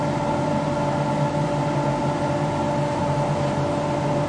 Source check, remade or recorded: recorded